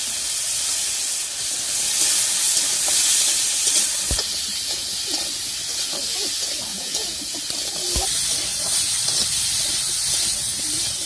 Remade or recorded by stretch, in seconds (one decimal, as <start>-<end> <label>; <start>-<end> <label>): 0.0-6.7 recorded; 6.7-7.2 remade; 7.2-11.1 recorded